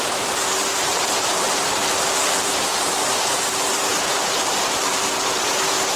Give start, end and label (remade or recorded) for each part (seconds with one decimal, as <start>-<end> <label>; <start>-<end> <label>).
0.0-1.8 remade; 1.8-2.4 recorded; 2.4-6.0 remade